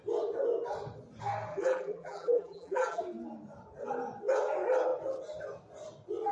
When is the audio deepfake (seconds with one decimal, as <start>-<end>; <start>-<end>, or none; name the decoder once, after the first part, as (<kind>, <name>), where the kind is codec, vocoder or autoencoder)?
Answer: 1.5-3.0 (vocoder, BigVGAN v2)